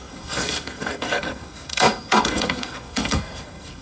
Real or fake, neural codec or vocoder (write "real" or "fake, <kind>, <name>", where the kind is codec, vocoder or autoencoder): fake, codec, SNAC